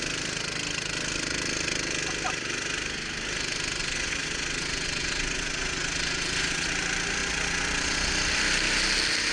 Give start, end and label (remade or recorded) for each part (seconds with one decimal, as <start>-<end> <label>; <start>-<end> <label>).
0.0-3.8 recorded; 3.8-6.7 remade; 6.7-7.2 recorded; 7.2-8.1 remade; 8.1-9.3 recorded